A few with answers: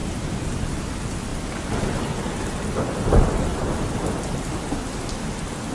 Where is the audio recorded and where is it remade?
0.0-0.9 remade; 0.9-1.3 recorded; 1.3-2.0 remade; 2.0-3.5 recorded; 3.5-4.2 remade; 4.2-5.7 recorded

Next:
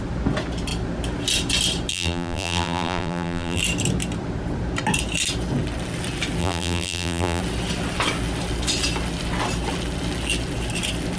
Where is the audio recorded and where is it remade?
0.0-1.9 recorded; 1.9-3.6 remade; 3.6-6.4 recorded; 6.4-7.4 remade; 7.4-11.2 recorded

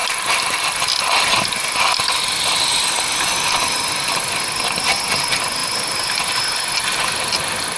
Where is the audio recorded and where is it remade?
0.0-0.6 remade; 0.6-7.8 recorded

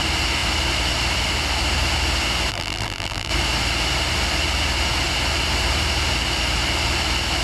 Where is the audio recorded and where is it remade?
0.0-2.5 recorded; 2.5-3.3 remade; 3.3-7.4 recorded